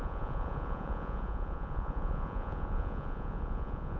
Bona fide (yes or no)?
no